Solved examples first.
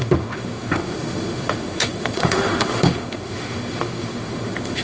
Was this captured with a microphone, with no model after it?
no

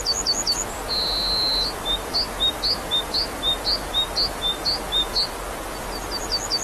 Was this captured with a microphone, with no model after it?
yes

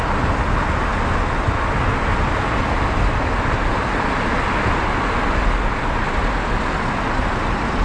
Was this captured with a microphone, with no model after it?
yes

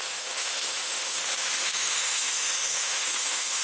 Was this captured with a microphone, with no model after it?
no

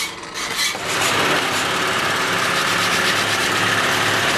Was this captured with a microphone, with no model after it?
yes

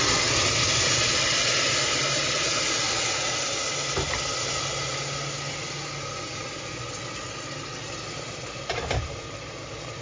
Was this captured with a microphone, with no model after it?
yes